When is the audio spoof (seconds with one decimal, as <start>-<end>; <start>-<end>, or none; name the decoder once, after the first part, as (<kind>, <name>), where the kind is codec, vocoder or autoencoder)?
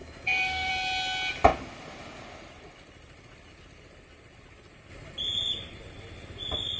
0.0-0.7 (codec, DAC)